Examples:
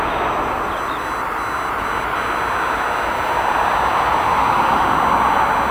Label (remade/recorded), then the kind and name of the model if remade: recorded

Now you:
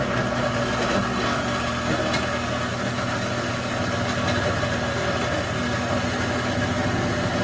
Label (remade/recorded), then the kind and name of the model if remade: recorded